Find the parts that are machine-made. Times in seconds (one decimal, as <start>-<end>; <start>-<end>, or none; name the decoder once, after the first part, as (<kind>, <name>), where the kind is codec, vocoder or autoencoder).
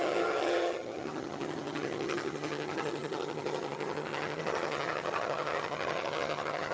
0.0-6.7 (vocoder, HiFi-GAN)